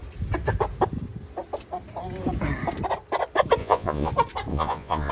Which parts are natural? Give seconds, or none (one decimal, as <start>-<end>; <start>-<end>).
0.0-3.6; 4.1-4.5